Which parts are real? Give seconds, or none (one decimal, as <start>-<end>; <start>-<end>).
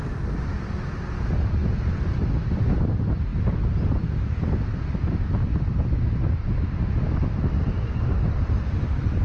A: 0.0-9.2